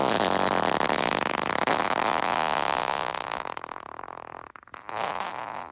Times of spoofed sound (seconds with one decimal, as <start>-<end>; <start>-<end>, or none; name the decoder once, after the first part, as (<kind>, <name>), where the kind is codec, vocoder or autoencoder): none